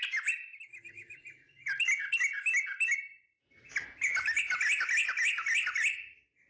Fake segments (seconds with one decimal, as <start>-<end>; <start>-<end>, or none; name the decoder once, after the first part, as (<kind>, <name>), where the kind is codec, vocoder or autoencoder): none